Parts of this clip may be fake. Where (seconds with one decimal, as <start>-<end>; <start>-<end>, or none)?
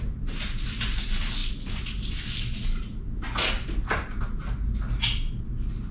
none